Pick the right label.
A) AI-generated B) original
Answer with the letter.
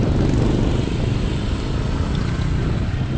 B